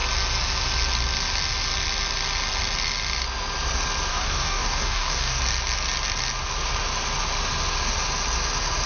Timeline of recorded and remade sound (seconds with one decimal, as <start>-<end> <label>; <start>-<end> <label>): 0.0-4.1 recorded; 4.1-5.4 remade; 5.4-8.9 recorded